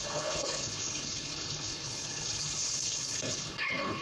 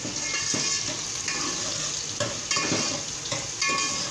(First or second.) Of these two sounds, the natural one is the second